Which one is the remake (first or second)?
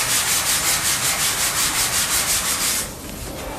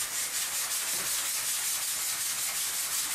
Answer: first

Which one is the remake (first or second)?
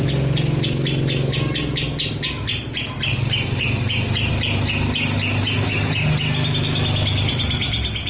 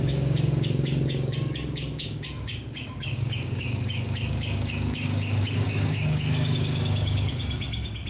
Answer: second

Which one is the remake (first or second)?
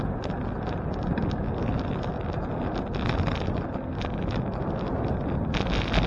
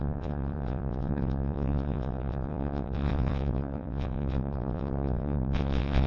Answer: second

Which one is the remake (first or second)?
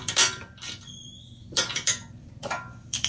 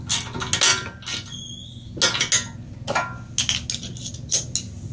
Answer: first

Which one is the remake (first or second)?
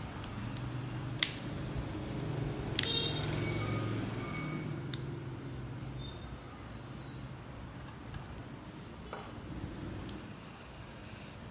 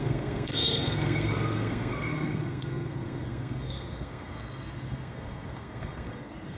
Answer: second